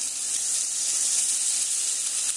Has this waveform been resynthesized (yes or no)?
no